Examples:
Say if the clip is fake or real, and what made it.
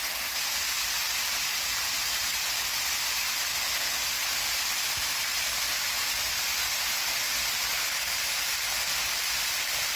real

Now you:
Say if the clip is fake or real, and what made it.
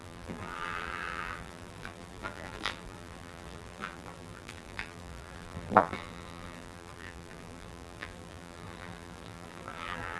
fake, vocoder, BigVGAN v2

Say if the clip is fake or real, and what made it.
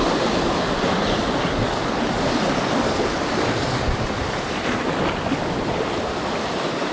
real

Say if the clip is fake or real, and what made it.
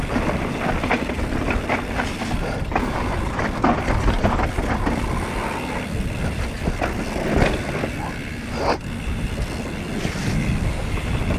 real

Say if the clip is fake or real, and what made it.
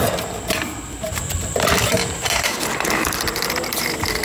fake, vocoder, BigVGAN v2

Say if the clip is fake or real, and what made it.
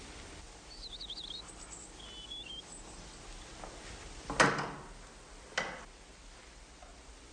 real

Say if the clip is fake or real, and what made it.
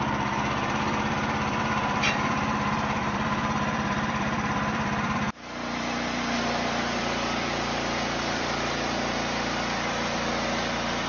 fake, vocoder, BigVGAN v2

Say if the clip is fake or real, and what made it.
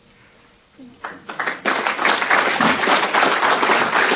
real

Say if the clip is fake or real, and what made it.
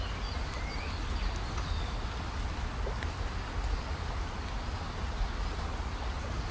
real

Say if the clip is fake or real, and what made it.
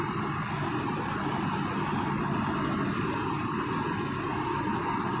real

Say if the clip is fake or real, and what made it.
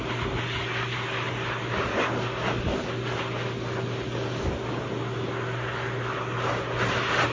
real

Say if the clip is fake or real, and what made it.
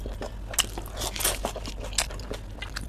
real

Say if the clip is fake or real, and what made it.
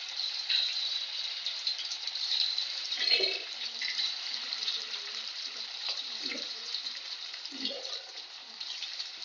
fake, vocoder, BigVGAN v2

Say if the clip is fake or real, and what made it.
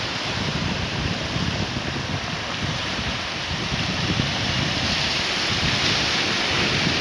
fake, vocoder, BigVGAN v2